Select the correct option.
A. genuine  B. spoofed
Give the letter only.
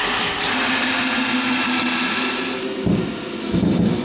A